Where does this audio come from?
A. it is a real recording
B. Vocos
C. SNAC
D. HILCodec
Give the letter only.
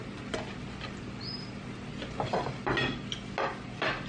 A